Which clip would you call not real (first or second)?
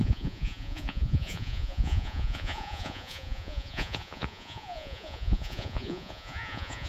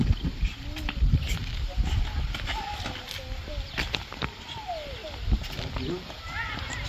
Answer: first